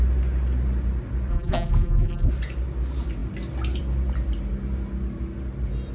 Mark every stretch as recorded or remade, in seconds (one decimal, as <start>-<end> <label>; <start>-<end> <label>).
0.0-1.3 recorded; 1.3-2.3 remade; 2.3-5.9 recorded